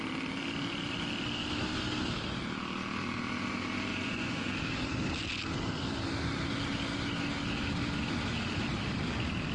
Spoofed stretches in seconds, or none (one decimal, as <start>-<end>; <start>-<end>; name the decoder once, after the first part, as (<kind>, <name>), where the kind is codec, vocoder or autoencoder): 3.9-4.5 (vocoder, Vocos)